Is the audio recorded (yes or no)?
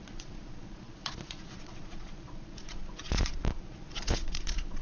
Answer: no